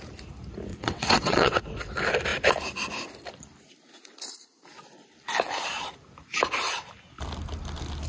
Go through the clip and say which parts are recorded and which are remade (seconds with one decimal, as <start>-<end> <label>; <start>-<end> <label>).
0.0-0.7 recorded; 0.7-1.6 remade; 1.6-8.1 recorded